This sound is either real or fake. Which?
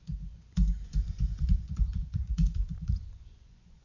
fake